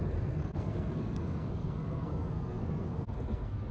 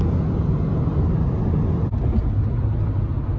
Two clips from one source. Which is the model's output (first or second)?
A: first